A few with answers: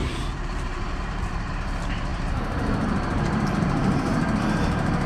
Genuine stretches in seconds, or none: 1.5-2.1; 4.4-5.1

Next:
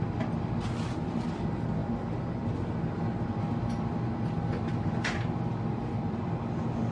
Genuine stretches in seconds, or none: 0.0-6.9